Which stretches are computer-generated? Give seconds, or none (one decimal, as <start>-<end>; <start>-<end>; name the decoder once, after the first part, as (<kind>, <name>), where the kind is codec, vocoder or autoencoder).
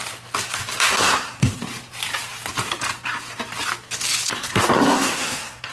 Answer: 0.9-1.6 (codec, SNAC); 4.4-5.7